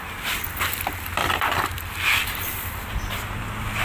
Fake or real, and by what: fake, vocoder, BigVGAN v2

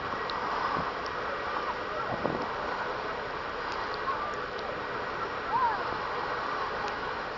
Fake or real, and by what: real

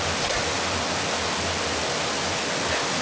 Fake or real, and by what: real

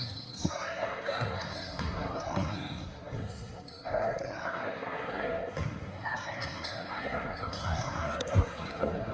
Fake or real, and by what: fake, codec, SNAC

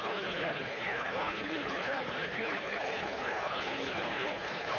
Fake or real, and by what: fake, codec, HILCodec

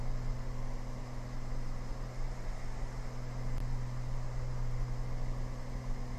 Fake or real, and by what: real